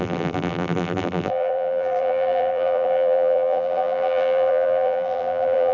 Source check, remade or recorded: remade